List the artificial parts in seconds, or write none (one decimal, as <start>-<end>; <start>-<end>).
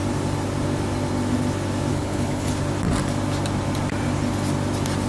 1.9-2.5